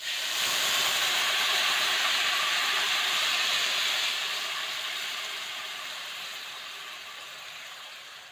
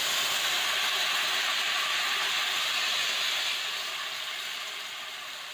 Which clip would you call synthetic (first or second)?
first